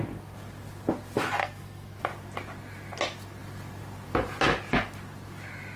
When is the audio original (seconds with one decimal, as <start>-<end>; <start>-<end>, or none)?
0.0-1.4; 2.0-5.8